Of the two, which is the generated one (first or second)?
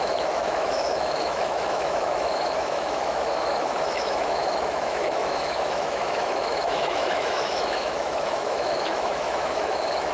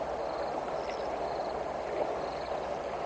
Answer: first